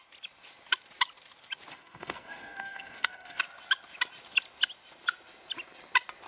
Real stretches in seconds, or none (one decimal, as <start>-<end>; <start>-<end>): 0.0-1.7; 3.4-6.3